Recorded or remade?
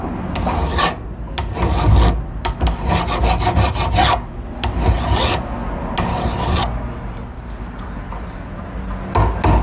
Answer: recorded